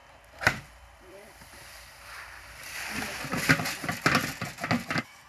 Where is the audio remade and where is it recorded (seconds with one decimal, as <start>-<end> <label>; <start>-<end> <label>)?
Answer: 0.0-3.2 remade; 3.2-5.3 recorded